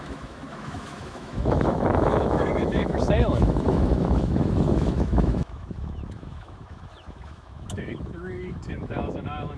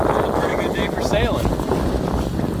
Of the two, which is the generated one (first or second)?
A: first